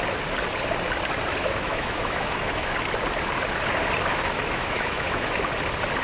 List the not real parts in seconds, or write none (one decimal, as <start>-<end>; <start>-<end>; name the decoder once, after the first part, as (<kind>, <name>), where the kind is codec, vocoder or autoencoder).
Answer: 1.4-2.7 (autoencoder, DAC-VAE); 4.1-5.4